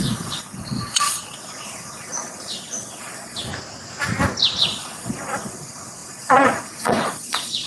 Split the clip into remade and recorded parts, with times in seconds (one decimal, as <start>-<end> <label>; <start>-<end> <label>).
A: 0.0-3.5 remade; 3.5-4.6 recorded; 4.6-7.7 remade